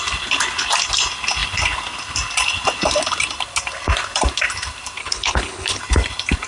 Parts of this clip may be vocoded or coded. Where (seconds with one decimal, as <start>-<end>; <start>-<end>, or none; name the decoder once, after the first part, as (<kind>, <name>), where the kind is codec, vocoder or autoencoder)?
5.0-5.8 (codec, HILCodec)